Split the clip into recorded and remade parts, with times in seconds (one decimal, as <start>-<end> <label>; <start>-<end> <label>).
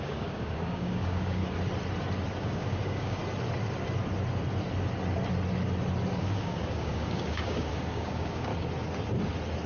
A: 0.0-1.4 remade; 1.4-2.4 recorded; 2.4-3.2 remade; 3.2-6.2 recorded; 6.2-8.5 remade; 8.5-9.7 recorded